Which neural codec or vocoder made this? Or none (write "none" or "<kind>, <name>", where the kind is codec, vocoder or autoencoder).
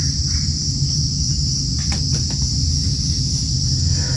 none